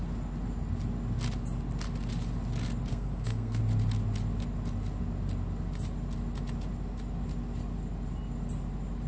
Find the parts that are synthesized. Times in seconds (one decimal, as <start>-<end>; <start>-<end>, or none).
2.9-3.6